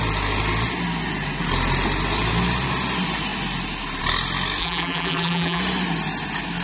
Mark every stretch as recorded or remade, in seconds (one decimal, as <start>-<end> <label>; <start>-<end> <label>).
0.0-4.6 recorded; 4.6-5.6 remade; 5.6-6.6 recorded